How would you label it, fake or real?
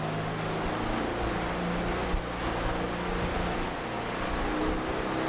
real